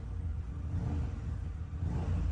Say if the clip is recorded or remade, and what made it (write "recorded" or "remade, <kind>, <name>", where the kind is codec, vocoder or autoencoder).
recorded